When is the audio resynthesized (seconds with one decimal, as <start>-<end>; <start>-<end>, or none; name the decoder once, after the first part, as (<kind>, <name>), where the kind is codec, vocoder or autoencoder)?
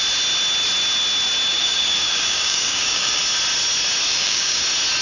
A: 1.5-3.2 (codec, DAC); 4.1-4.6